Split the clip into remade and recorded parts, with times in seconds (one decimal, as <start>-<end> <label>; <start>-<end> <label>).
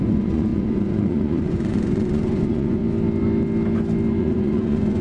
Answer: 0.0-2.8 remade; 2.8-4.2 recorded; 4.2-5.0 remade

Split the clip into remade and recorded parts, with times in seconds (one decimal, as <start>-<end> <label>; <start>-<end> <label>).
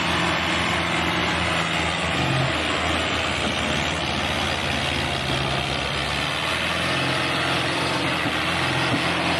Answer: 0.0-9.4 recorded